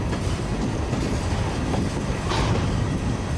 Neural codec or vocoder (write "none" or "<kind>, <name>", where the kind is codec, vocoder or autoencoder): none